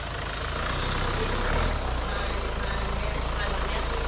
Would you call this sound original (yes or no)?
yes